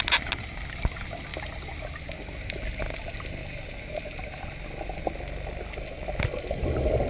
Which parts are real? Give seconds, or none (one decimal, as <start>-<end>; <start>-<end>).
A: 0.0-7.1